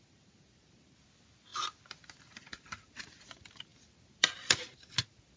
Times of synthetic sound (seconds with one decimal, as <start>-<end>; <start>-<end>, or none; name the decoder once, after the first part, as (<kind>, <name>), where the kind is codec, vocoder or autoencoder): none